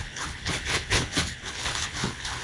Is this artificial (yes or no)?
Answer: yes